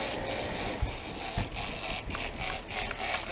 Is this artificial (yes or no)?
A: no